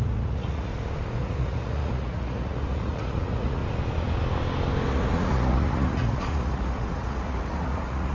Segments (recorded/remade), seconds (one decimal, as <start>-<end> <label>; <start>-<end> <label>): 0.0-0.7 remade; 0.7-1.2 recorded; 1.2-3.6 remade; 3.6-4.9 recorded; 4.9-8.1 remade